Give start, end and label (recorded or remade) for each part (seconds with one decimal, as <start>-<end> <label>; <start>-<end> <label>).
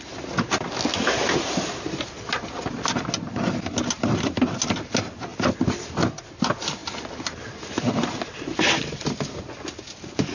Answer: 0.0-5.3 recorded; 5.3-6.0 remade; 6.0-6.8 recorded; 6.8-7.4 remade; 7.4-10.3 recorded